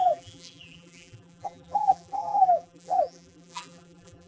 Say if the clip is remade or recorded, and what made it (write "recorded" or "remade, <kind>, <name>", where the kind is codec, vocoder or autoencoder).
remade, vocoder, BigVGAN v2